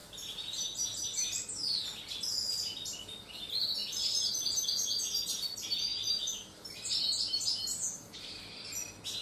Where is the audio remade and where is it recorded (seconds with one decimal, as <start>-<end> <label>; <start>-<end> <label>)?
0.0-1.7 remade; 1.7-5.9 recorded; 5.9-8.4 remade; 8.4-9.2 recorded